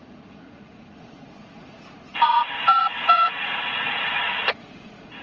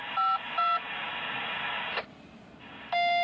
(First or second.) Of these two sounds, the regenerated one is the first